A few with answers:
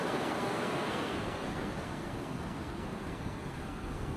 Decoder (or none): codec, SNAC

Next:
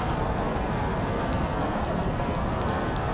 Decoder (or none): codec, SNAC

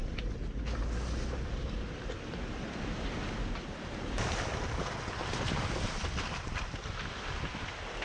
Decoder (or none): none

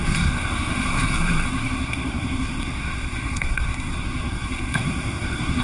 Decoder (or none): codec, SNAC